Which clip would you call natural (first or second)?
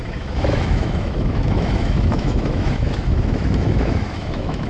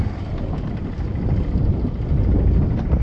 second